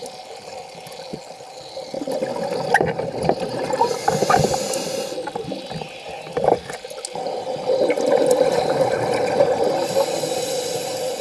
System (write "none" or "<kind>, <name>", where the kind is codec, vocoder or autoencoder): none